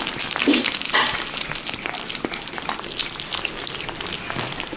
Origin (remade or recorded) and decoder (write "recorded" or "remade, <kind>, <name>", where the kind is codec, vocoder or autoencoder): recorded